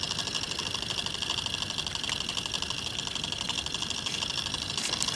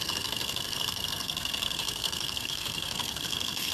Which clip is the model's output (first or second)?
second